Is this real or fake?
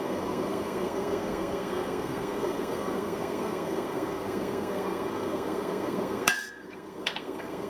fake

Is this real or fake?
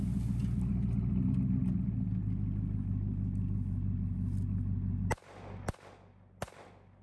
real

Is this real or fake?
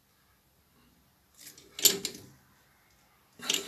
real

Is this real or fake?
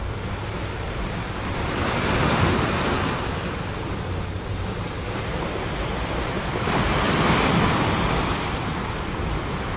real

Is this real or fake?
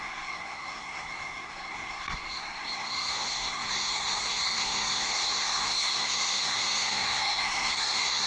fake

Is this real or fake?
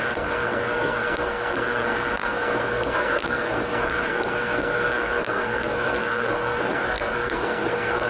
fake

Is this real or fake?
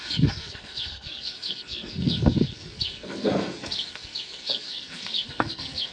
fake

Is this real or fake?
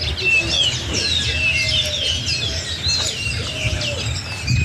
real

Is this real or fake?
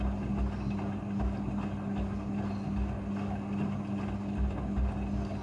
real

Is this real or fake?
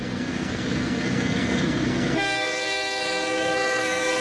fake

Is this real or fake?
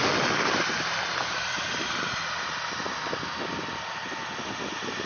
real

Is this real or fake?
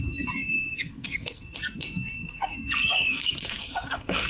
fake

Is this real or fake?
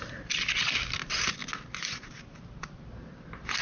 real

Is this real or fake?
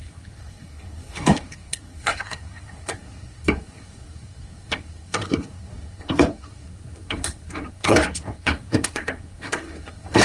fake